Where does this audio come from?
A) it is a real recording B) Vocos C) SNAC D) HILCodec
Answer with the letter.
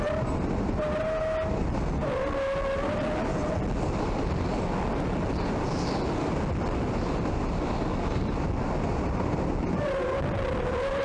A